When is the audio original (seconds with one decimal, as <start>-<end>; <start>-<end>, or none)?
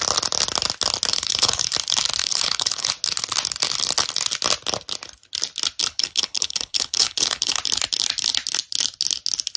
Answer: 0.0-1.1; 1.7-2.2; 2.9-5.8; 7.6-9.6